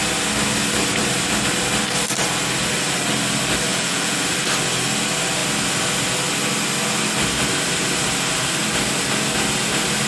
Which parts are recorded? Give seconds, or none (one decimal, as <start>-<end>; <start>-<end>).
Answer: 0.0-3.7; 4.2-10.1